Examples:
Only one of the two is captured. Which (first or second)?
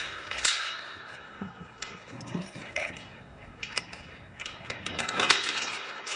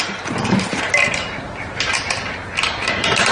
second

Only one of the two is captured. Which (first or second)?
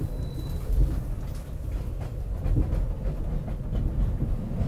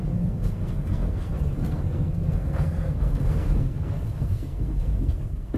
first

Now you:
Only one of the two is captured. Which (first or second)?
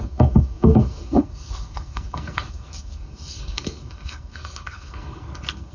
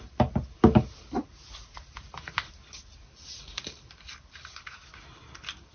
second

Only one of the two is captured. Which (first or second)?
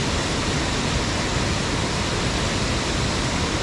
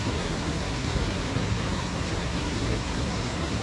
first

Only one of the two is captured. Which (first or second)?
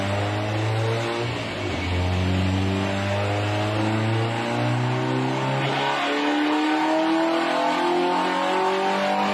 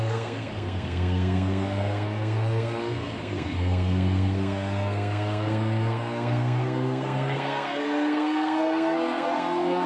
first